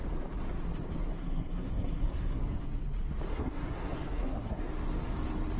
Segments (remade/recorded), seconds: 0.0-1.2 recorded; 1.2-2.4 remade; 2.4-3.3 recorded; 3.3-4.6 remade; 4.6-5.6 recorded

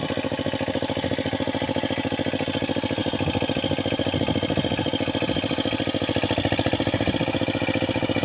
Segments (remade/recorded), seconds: 0.0-8.2 recorded

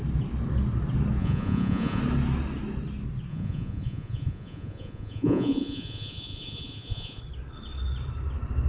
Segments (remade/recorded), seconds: 0.0-1.2 recorded; 1.2-2.0 remade; 2.0-3.3 recorded; 3.3-7.2 remade; 7.2-8.7 recorded